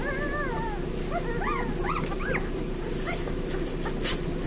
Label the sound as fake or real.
real